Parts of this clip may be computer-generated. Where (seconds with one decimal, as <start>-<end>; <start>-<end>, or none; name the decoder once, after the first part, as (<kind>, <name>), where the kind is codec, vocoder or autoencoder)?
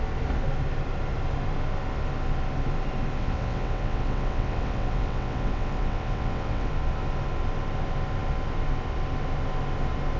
3.2-6.7 (vocoder, WaveNeXt)